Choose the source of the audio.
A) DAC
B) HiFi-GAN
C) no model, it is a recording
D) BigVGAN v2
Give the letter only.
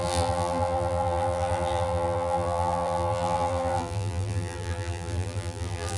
D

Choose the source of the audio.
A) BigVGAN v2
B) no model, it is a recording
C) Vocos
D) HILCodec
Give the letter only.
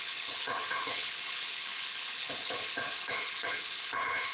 D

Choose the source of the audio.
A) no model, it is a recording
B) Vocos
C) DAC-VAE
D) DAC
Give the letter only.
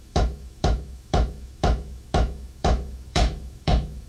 C